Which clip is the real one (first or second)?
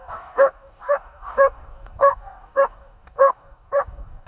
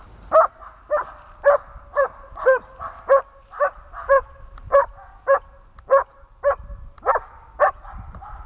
second